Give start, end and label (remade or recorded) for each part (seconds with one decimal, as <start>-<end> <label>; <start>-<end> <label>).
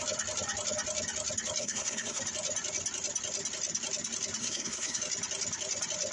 0.0-1.6 recorded; 1.6-2.2 remade; 2.2-4.4 recorded; 4.4-5.0 remade; 5.0-6.1 recorded